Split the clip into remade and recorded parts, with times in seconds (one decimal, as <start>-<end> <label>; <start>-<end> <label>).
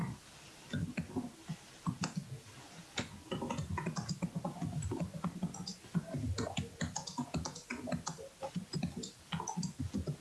0.0-10.2 recorded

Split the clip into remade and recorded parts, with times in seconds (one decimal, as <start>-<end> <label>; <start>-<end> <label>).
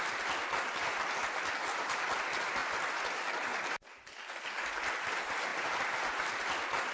0.0-6.9 recorded